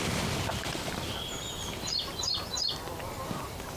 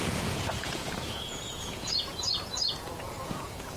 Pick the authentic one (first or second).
first